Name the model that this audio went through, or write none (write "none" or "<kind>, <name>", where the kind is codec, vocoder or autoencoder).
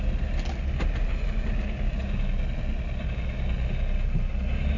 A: none